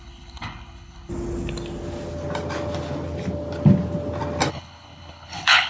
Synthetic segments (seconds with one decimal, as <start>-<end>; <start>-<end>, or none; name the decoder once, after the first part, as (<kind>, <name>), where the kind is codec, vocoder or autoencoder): 0.0-1.1 (codec, HILCodec); 4.5-5.7